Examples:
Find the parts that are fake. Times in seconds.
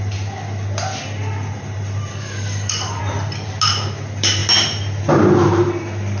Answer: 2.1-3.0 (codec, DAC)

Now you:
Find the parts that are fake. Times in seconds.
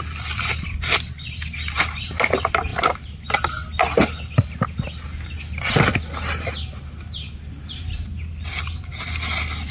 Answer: 2.7-5.7 (vocoder, BigVGAN v2)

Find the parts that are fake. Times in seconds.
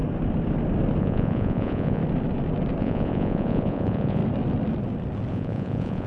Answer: 1.0-2.0 (vocoder, Vocos); 2.8-4.2; 5.3-6.1